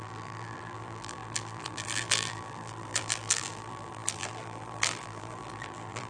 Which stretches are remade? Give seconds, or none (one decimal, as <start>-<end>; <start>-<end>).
0.0-6.1